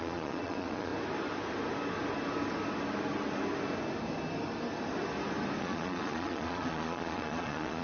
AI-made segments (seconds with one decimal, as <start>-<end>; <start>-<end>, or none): 0.0-0.9; 5.6-7.8